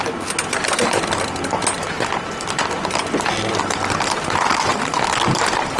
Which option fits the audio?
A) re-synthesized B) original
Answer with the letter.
B